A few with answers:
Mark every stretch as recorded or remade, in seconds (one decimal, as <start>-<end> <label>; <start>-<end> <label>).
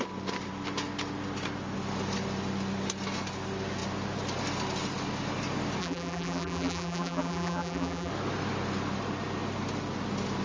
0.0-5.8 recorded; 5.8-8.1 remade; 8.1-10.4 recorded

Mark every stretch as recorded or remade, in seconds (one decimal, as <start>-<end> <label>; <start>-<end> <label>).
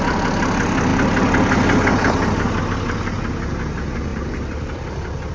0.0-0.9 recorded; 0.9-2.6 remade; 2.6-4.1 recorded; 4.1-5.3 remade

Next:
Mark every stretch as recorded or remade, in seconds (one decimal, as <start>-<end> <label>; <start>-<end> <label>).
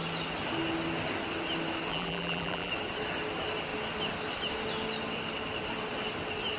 0.0-1.9 recorded; 1.9-2.7 remade; 2.7-6.6 recorded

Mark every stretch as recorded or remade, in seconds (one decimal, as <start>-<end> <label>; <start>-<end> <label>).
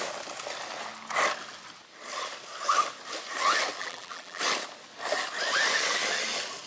0.0-3.8 recorded; 3.8-4.4 remade; 4.4-6.7 recorded